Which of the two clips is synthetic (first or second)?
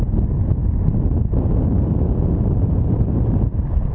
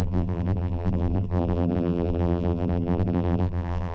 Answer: second